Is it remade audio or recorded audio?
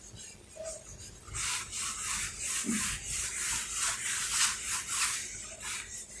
recorded